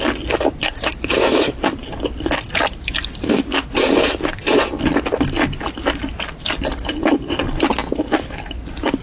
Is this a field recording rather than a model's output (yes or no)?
yes